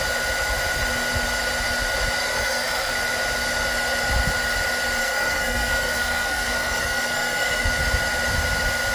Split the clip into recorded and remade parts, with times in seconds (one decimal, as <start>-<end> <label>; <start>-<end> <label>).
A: 0.0-2.2 recorded; 2.2-2.9 remade; 2.9-5.0 recorded; 5.0-7.7 remade; 7.7-8.9 recorded